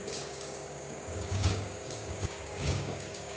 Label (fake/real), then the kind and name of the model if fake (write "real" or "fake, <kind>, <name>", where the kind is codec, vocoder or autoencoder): fake, codec, DAC